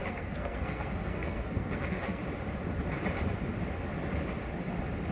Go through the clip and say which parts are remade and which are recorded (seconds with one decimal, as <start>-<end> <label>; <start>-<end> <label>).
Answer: 0.0-2.2 remade; 2.2-5.1 recorded